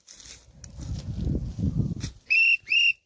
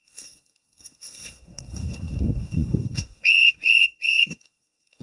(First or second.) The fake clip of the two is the second